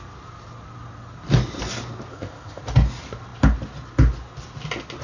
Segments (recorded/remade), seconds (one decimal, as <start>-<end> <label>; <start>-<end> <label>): 0.0-2.1 recorded; 2.1-2.6 remade; 2.6-5.0 recorded